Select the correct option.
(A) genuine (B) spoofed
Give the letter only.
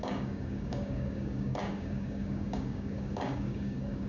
B